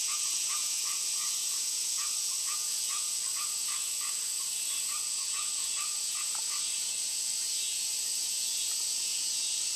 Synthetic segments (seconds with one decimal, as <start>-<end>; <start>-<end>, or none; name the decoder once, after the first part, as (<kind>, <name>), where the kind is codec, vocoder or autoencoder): 0.0-9.8 (vocoder, Vocos)